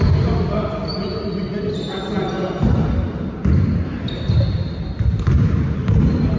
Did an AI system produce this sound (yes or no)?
no